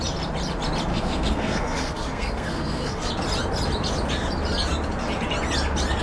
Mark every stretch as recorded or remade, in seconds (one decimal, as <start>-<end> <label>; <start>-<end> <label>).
0.0-0.9 recorded; 0.9-3.1 remade; 3.1-6.0 recorded